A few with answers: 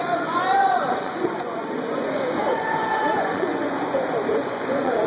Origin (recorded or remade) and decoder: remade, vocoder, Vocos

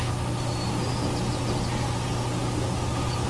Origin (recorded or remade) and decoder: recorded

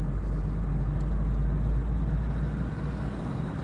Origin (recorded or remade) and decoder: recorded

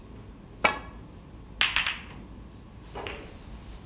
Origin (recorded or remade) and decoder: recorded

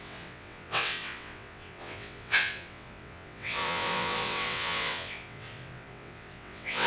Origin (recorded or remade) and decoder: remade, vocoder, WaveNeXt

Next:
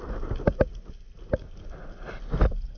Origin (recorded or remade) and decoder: recorded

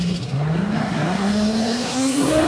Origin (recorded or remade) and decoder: remade, codec, SNAC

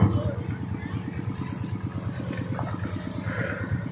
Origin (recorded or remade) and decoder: recorded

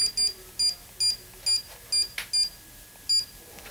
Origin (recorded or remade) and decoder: recorded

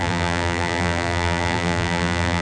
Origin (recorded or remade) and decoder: remade, vocoder, BigVGAN v2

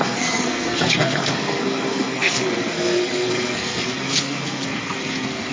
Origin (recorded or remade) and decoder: remade, codec, SNAC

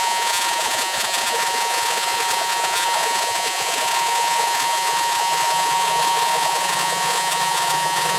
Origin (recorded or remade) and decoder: remade, vocoder, Vocos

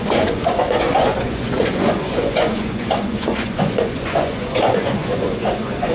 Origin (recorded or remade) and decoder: remade, vocoder, Vocos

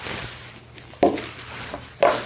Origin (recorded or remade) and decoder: recorded